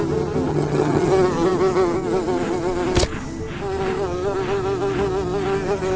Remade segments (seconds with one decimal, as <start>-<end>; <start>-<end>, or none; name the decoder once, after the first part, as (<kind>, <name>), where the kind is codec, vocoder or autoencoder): 0.5-1.1 (vocoder, HiFi-GAN)

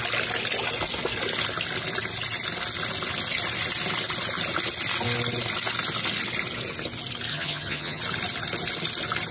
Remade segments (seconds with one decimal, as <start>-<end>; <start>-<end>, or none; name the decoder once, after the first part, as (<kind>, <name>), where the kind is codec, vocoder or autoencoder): 7.3-8.0 (vocoder, HiFi-GAN)

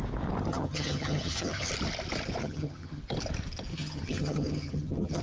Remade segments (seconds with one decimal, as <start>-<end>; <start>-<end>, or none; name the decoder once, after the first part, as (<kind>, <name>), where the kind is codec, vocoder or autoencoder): 0.5-1.7 (vocoder, HiFi-GAN); 2.4-3.0; 3.7-5.2

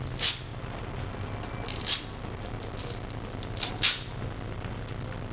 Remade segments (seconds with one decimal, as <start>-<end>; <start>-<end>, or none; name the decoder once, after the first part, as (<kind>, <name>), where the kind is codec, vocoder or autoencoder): none

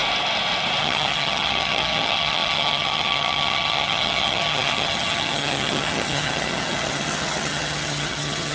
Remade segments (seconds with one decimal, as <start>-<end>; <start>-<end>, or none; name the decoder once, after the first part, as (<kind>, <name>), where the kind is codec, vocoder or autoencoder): 0.8-8.5 (vocoder, HiFi-GAN)

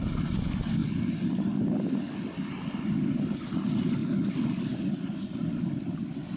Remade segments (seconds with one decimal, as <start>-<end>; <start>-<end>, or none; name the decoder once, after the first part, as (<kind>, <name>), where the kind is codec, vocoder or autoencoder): none